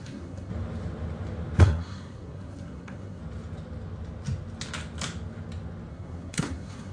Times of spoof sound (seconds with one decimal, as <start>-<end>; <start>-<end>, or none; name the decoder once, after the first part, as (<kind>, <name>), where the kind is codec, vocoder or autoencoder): 0.0-0.5 (codec, SNAC); 1.6-3.2; 5.9-6.9